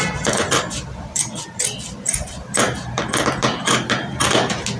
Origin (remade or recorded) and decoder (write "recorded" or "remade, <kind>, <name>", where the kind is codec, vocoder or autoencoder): recorded